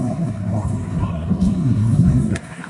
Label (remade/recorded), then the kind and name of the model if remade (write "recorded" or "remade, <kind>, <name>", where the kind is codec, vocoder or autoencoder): remade, codec, SNAC